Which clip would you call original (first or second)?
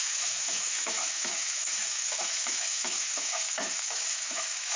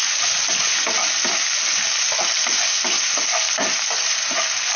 second